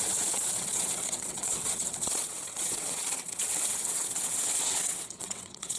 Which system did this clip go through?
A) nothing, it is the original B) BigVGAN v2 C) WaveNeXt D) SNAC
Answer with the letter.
C